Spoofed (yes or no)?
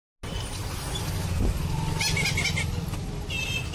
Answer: no